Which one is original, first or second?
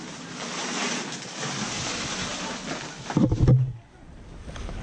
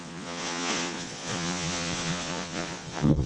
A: first